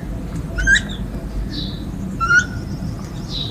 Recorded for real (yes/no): yes